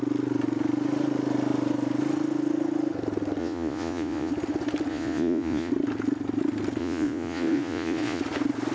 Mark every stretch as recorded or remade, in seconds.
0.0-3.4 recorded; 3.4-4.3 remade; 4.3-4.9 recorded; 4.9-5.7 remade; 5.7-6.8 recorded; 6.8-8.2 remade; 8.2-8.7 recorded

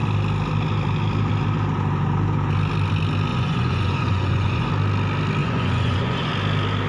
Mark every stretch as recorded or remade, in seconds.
0.0-3.3 recorded; 3.3-4.7 remade; 4.7-5.4 recorded; 5.4-6.3 remade; 6.3-6.9 recorded

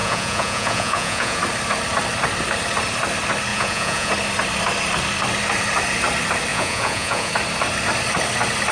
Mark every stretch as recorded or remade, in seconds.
0.0-1.4 remade; 1.4-3.5 recorded; 3.5-4.1 remade; 4.1-6.5 recorded; 6.5-7.3 remade; 7.3-8.7 recorded

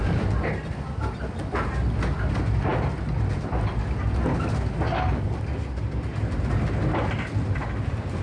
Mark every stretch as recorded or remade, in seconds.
0.0-8.2 recorded

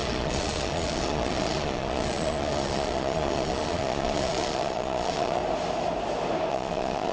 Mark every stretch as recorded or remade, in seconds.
0.0-5.4 remade; 5.4-6.5 recorded; 6.5-7.1 remade